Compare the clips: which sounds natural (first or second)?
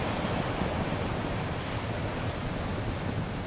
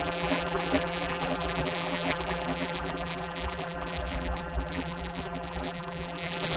first